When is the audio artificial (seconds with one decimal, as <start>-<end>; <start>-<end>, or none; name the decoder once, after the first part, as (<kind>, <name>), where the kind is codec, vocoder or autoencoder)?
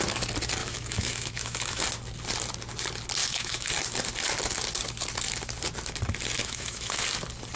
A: 0.6-1.8 (autoencoder, DAC-VAE); 3.2-3.7; 6.4-7.0